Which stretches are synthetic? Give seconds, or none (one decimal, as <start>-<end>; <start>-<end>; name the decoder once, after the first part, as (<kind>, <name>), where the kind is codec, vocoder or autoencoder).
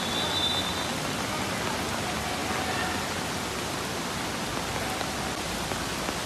none